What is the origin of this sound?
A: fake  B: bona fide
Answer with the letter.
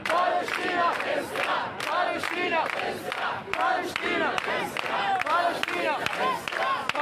B